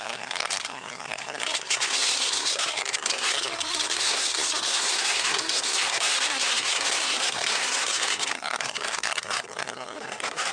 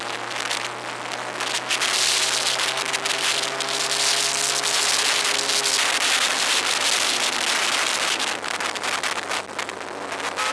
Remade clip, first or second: first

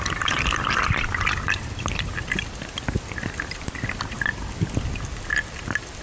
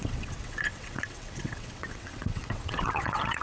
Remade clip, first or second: second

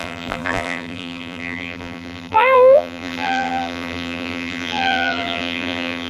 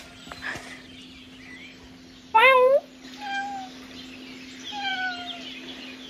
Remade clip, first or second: first